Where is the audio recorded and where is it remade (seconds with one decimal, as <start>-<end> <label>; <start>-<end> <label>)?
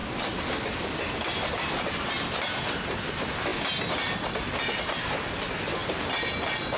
0.0-2.1 remade; 2.1-6.8 recorded